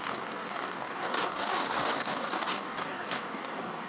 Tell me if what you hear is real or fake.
fake